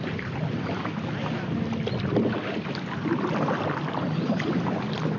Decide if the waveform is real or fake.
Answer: real